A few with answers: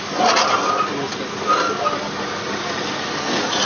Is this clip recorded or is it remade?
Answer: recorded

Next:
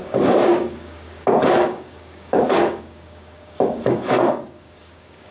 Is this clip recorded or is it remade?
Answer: remade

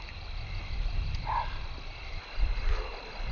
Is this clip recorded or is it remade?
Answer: recorded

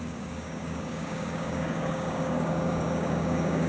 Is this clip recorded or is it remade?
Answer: remade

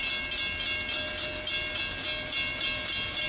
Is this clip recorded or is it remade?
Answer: recorded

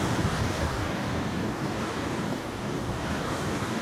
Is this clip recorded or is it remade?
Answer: remade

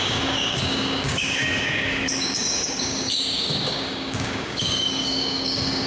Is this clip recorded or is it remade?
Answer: remade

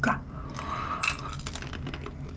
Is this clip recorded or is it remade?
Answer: recorded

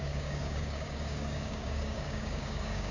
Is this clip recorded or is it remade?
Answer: remade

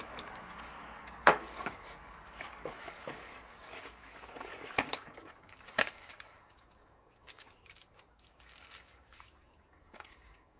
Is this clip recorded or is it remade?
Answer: remade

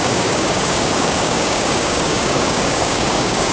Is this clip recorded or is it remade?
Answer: remade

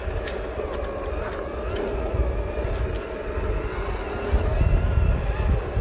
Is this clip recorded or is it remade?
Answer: recorded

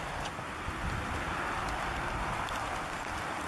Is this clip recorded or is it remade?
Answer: recorded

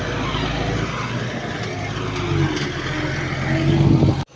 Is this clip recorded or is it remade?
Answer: recorded